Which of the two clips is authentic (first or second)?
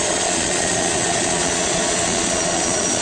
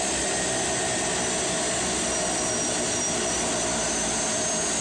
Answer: second